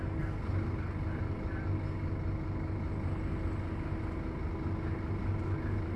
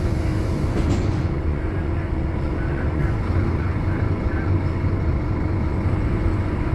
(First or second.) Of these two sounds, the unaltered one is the first